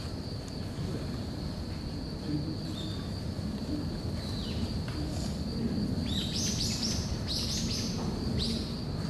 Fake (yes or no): no